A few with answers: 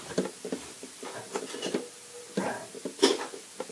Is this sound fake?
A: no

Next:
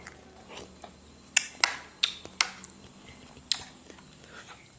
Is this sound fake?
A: no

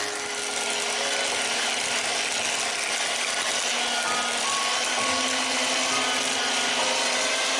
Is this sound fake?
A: no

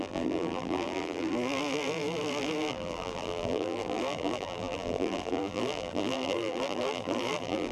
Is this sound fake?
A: yes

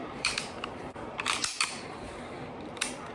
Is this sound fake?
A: yes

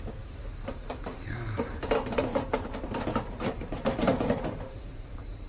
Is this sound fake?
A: yes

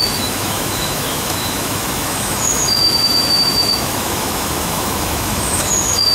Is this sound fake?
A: yes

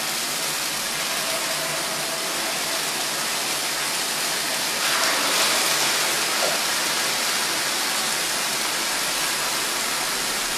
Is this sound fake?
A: no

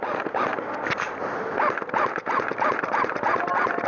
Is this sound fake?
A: no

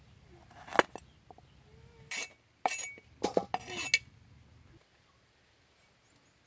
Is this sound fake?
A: no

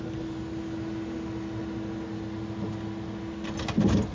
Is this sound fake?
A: no